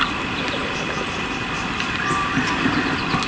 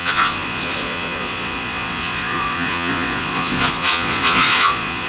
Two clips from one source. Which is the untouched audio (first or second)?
first